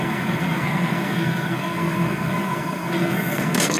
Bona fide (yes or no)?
no